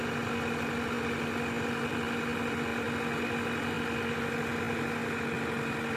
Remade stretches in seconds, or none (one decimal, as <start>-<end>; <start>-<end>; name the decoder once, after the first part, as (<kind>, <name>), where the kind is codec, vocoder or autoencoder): none